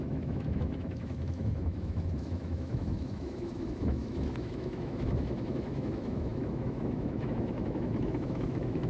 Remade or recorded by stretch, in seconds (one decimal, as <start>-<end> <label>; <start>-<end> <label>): 0.0-8.9 remade